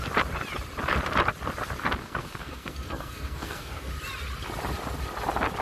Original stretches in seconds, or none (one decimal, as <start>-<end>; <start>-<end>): 0.0-2.0; 3.9-5.6